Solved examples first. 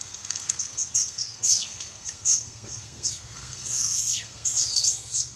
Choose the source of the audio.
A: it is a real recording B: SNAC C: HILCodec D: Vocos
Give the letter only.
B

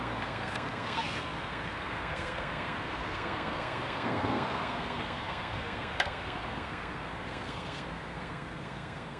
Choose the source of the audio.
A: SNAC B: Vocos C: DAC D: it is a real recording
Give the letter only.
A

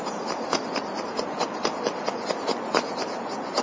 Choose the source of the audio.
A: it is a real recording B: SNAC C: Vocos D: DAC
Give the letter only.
A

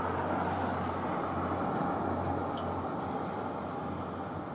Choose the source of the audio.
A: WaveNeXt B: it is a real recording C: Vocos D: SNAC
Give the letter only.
B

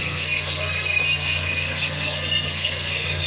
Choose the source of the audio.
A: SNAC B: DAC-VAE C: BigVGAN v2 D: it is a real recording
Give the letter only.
A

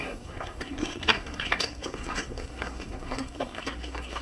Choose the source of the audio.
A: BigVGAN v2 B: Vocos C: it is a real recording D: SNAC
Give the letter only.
D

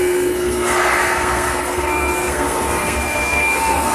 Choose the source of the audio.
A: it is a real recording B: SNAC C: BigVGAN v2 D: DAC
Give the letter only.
B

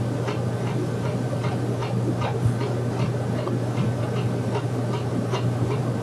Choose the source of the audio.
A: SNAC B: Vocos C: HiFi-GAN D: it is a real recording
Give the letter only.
D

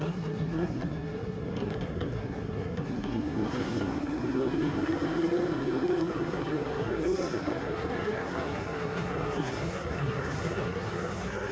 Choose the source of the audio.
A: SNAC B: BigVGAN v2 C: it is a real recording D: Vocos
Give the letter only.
A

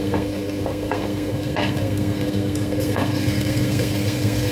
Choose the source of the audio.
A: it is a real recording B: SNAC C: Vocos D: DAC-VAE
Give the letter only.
B